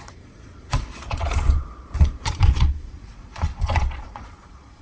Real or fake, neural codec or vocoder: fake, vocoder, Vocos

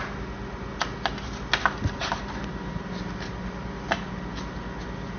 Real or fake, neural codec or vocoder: real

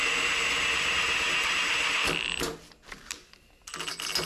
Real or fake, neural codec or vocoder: real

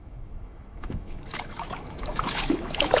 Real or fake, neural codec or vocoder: fake, autoencoder, DAC-VAE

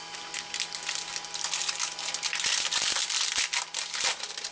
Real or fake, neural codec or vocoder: real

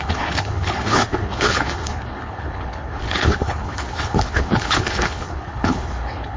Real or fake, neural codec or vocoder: fake, codec, HILCodec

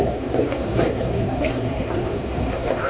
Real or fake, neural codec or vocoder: fake, codec, SNAC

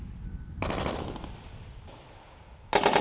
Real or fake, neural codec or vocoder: real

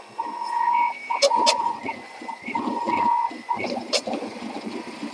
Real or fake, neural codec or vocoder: fake, vocoder, Vocos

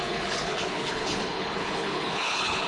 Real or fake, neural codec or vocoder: fake, codec, HILCodec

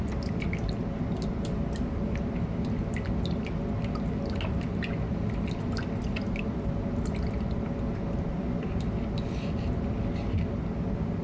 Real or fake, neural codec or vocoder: real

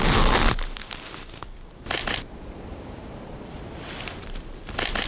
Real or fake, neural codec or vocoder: fake, vocoder, BigVGAN v2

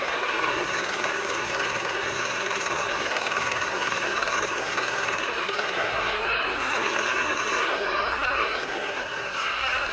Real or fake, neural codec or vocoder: fake, codec, SNAC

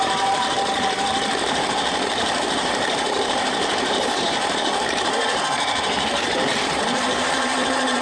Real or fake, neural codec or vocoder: fake, vocoder, BigVGAN v2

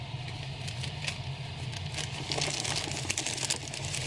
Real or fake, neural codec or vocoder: real